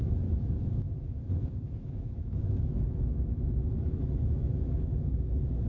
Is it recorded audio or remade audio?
remade